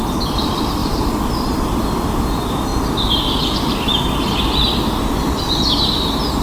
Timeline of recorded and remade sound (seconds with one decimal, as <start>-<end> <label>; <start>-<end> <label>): 0.0-0.8 recorded; 0.8-1.7 remade; 1.7-6.4 recorded